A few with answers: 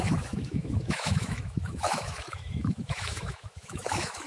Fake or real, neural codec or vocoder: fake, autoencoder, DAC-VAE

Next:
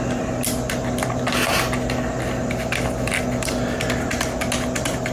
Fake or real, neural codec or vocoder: real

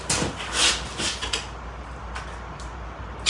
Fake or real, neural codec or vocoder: real